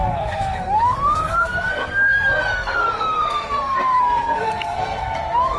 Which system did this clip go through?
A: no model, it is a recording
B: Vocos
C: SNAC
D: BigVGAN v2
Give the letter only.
C